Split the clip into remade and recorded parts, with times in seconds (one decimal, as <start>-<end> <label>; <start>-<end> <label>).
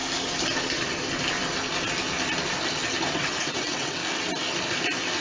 0.0-3.1 recorded; 3.1-4.0 remade; 4.0-5.2 recorded